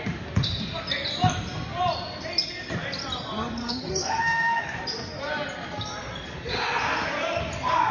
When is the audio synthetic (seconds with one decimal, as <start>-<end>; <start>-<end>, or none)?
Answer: 3.6-4.8